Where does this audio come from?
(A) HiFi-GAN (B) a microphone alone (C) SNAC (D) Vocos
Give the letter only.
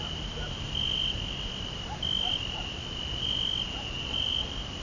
B